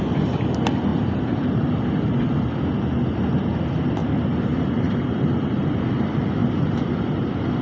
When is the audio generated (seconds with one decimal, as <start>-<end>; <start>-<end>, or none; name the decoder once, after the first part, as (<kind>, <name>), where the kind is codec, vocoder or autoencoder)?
0.9-1.7 (vocoder, BigVGAN v2); 4.0-6.0; 6.4-7.6